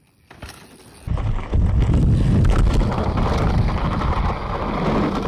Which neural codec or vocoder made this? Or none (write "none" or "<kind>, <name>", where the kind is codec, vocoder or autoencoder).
none